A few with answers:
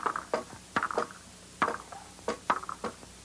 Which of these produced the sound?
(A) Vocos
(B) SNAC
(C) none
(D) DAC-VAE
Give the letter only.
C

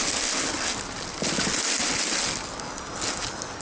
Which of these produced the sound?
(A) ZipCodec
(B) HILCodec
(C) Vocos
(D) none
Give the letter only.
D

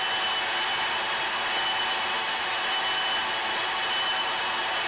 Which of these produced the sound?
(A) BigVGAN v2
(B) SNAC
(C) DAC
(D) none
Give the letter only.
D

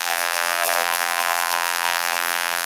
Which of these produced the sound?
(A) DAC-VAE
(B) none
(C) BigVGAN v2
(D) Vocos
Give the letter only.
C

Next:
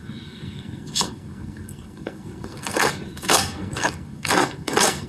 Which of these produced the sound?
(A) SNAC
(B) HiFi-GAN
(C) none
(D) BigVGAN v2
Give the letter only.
A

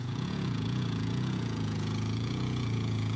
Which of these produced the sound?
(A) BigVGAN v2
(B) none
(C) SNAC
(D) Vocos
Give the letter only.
D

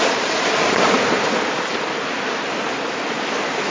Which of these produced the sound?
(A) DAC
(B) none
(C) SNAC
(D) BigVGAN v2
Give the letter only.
B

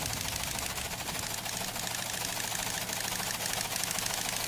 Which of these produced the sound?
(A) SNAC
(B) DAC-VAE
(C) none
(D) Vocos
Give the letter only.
C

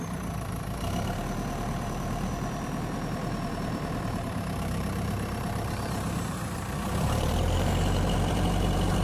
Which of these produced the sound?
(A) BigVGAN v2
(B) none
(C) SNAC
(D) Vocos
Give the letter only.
A